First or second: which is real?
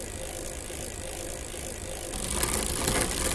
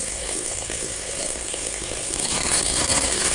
first